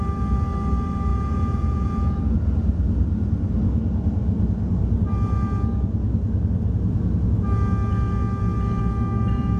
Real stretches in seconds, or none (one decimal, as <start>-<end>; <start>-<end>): 0.0-1.1; 2.2-9.6